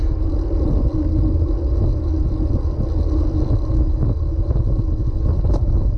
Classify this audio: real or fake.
real